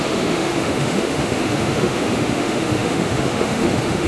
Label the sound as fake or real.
fake